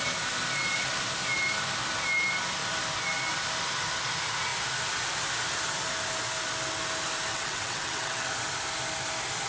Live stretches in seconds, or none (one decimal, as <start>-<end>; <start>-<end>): 0.0-7.3; 8.3-9.5